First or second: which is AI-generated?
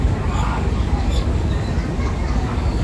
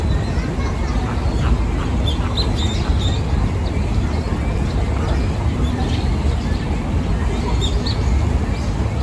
first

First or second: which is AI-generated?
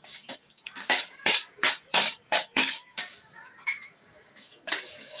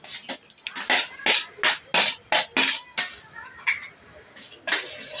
first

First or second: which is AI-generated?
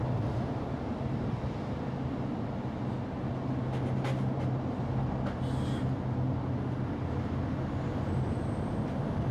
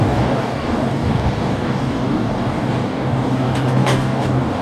second